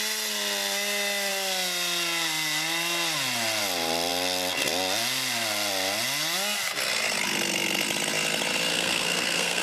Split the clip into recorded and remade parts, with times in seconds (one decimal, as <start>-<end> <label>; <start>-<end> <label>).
0.0-8.7 recorded; 8.7-9.6 remade